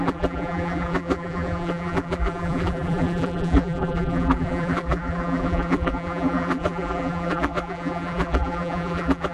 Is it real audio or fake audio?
fake